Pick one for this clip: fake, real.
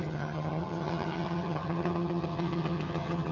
fake